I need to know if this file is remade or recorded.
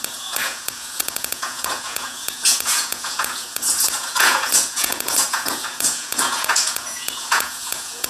remade